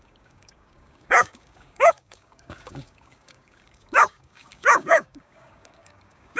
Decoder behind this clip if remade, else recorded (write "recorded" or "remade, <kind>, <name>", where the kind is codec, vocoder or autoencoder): remade, codec, DAC